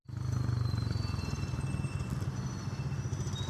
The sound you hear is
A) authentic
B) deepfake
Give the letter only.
A